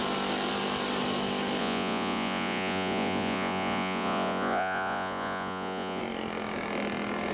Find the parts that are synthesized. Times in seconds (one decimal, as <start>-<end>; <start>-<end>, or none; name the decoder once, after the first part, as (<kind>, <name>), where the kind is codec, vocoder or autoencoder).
1.6-6.0 (vocoder, Vocos)